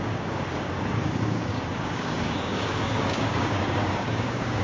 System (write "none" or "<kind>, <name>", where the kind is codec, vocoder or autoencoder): codec, DAC